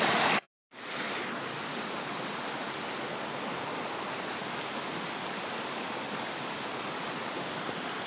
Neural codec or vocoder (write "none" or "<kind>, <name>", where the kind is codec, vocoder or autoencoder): none